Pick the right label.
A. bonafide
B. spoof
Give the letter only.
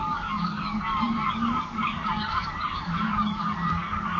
B